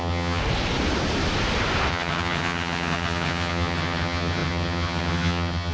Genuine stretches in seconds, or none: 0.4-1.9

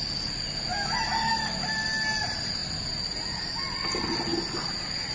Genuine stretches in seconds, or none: 0.0-5.1

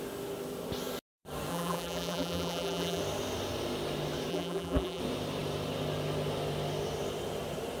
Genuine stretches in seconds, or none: 0.0-1.5; 3.0-4.3; 5.0-7.8

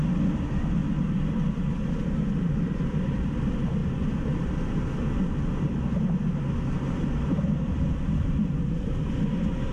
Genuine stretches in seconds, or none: 0.0-0.8; 3.4-9.7

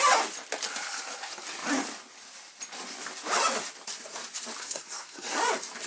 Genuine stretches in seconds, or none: 0.0-4.6; 5.4-5.9

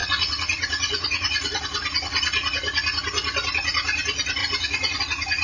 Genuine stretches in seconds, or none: 1.6-4.4; 5.0-5.4